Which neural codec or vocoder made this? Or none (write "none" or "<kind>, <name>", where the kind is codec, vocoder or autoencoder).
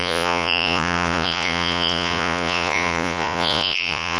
vocoder, Vocos